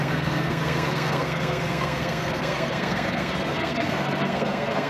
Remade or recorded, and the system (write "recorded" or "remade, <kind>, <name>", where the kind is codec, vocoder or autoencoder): remade, codec, SNAC